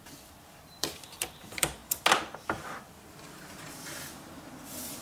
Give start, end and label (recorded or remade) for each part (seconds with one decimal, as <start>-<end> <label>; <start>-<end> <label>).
0.0-1.8 remade; 1.8-5.0 recorded